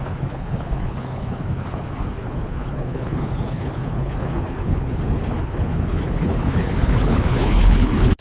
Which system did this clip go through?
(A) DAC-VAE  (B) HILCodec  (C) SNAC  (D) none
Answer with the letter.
B